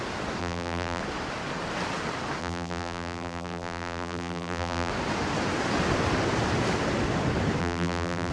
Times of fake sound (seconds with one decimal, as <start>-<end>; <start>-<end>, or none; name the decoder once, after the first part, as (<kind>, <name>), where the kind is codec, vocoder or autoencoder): 0.4-1.0 (vocoder, BigVGAN v2); 2.4-4.9; 7.6-8.3